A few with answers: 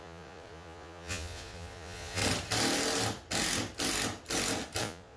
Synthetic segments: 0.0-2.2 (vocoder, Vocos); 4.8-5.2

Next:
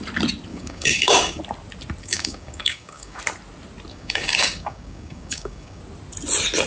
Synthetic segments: 0.5-1.4 (codec, DAC); 2.0-3.2; 3.9-5.8

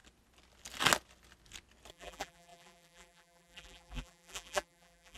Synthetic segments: 1.9-5.2 (vocoder, BigVGAN v2)

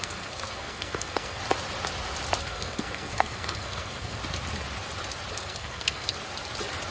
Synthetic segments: 0.0-1.4 (codec, SNAC); 2.4-4.2; 5.3-6.2